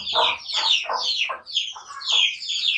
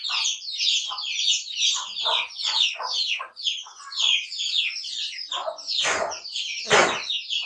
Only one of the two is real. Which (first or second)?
first